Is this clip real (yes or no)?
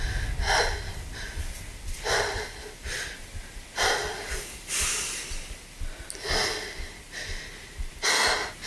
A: yes